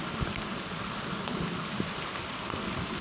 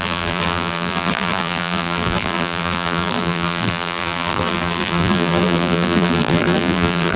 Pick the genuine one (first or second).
first